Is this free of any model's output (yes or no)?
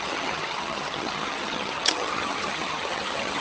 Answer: no